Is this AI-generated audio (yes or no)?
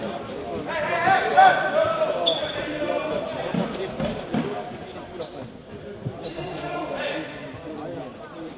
yes